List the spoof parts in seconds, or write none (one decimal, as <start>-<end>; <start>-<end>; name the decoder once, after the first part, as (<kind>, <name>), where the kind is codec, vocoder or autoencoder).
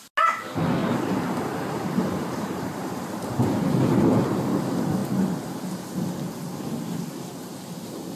0.8-3.2 (vocoder, BigVGAN v2)